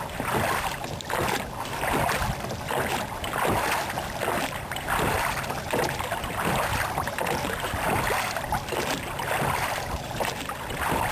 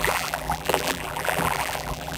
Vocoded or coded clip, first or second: second